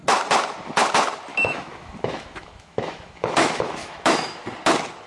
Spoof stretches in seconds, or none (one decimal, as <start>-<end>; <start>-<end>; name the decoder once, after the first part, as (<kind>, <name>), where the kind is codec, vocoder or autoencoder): 1.3-4.4 (autoencoder, DAC-VAE)